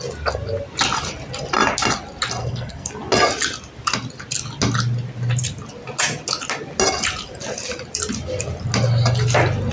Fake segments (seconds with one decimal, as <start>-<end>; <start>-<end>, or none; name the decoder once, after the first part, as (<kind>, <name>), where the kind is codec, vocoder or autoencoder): 2.4-2.9 (codec, SNAC)